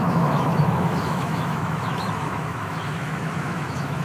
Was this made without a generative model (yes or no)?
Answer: no